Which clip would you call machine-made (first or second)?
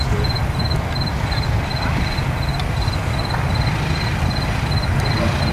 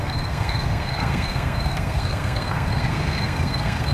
second